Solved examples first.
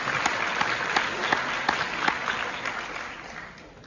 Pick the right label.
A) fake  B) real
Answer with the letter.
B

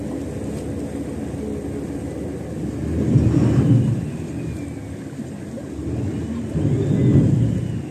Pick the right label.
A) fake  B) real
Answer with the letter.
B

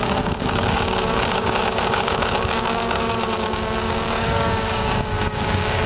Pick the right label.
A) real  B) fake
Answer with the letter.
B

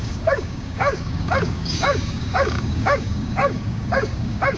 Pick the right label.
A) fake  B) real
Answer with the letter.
A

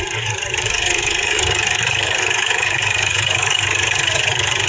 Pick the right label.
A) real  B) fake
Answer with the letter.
B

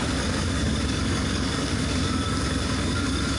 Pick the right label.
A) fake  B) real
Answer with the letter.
A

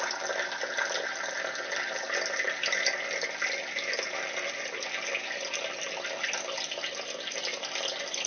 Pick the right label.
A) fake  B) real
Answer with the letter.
B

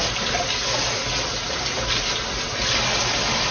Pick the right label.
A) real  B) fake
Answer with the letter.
A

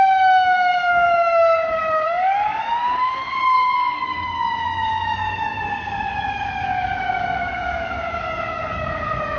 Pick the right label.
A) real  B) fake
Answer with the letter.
B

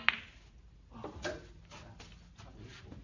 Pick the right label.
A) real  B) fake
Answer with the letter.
A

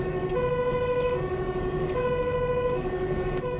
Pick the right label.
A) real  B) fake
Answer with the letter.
B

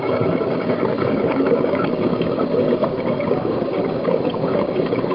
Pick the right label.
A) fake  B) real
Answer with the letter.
A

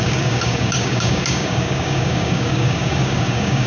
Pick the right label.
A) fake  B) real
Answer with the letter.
A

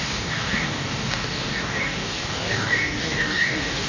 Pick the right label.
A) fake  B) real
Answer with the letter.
A